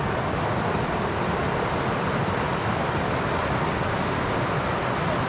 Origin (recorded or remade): recorded